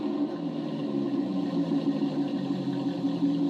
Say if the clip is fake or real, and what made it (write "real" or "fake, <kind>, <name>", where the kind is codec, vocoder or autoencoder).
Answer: real